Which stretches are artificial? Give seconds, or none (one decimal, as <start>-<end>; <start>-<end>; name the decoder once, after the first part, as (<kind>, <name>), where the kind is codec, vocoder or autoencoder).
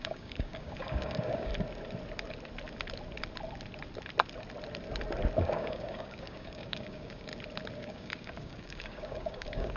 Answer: 0.0-1.5 (codec, DAC); 5.4-7.3; 7.8-9.8